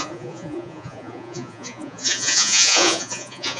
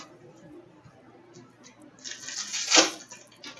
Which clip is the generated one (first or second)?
first